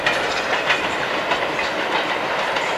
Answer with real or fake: real